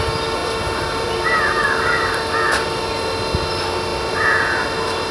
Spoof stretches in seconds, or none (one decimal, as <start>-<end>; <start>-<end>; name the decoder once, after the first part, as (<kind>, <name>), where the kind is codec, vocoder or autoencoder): none